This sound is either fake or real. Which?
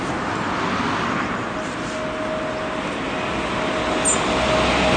real